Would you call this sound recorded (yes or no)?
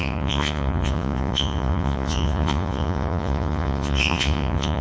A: no